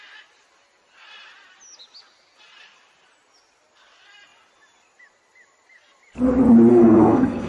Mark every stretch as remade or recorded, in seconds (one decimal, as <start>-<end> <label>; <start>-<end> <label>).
0.0-6.7 recorded; 6.7-7.5 remade